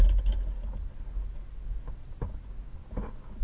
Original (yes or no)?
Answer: yes